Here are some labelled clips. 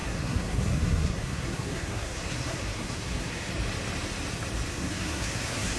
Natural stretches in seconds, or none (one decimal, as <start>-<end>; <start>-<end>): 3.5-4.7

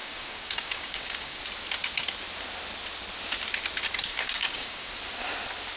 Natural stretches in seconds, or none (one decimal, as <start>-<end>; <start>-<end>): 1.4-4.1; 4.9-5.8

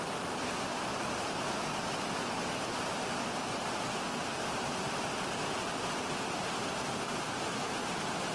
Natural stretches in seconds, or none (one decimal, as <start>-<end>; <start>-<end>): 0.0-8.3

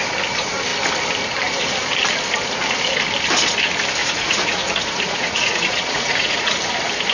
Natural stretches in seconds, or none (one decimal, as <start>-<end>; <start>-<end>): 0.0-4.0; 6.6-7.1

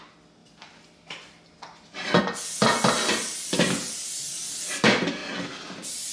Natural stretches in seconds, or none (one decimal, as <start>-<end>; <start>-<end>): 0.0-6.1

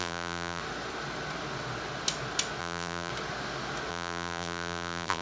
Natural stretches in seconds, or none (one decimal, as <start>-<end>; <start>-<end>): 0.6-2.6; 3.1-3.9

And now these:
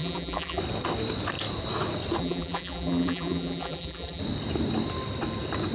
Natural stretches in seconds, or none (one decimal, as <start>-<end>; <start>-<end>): 0.6-2.2; 4.2-5.7

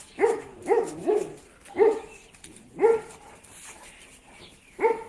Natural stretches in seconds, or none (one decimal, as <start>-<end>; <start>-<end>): 1.3-4.4